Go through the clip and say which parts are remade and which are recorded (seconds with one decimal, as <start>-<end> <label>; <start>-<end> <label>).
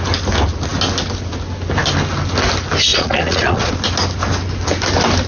0.0-2.9 recorded; 2.9-3.7 remade; 3.7-5.3 recorded